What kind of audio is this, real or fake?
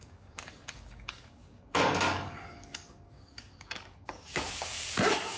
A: fake